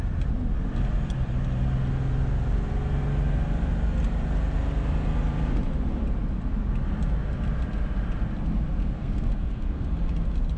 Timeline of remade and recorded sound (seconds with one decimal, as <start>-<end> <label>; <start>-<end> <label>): 0.0-8.8 recorded; 8.8-9.9 remade; 9.9-10.6 recorded